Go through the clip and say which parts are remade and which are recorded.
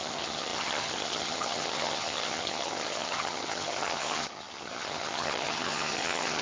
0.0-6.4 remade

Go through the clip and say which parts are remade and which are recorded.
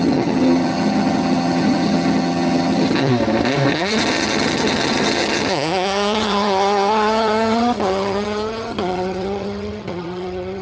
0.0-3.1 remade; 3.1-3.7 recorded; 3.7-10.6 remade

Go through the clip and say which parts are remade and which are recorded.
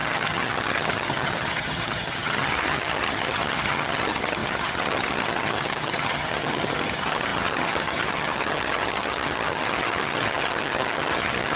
0.0-11.6 remade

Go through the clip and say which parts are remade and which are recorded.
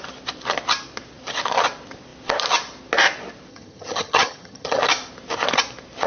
0.0-3.5 recorded; 3.5-4.8 remade; 4.8-6.1 recorded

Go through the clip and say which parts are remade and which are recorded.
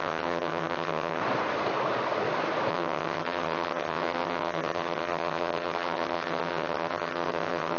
0.0-1.2 remade; 1.2-2.7 recorded; 2.7-7.8 remade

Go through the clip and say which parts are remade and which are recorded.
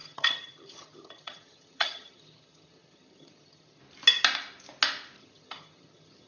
0.0-3.8 remade; 3.8-5.2 recorded; 5.2-6.3 remade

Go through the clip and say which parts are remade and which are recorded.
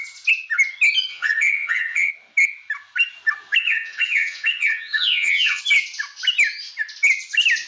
0.0-1.1 recorded; 1.1-2.1 remade; 2.1-3.6 recorded; 3.6-5.6 remade; 5.6-7.7 recorded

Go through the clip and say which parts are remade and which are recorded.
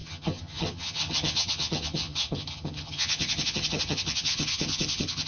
0.0-5.3 remade